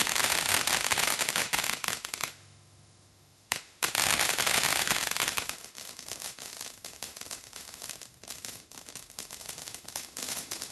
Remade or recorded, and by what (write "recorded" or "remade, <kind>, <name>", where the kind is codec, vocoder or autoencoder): remade, autoencoder, DAC-VAE